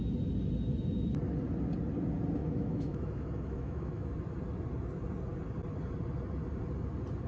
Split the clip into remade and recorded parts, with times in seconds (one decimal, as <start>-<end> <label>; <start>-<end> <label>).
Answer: 0.0-2.4 recorded; 2.4-4.1 remade; 4.1-7.3 recorded